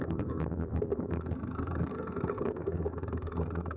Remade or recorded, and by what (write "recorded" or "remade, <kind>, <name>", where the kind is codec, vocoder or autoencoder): remade, codec, SNAC